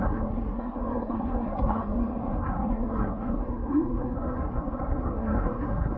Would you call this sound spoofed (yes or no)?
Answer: yes